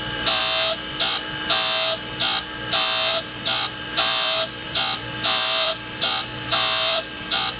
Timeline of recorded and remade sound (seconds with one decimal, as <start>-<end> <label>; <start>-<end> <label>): 0.0-0.4 remade; 0.4-3.1 recorded; 3.1-7.6 remade